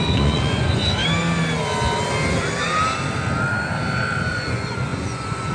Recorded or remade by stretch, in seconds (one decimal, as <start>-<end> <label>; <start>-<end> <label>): 0.0-1.0 remade; 1.0-4.3 recorded; 4.3-5.5 remade